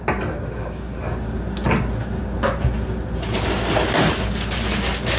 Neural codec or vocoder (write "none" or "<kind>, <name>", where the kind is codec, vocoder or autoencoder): none